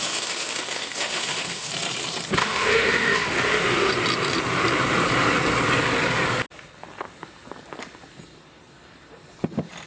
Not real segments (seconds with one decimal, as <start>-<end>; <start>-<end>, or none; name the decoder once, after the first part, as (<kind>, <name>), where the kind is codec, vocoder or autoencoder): 0.0-1.7 (autoencoder, DAC-VAE); 2.4-3.9